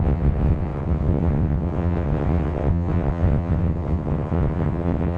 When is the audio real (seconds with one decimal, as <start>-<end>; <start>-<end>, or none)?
none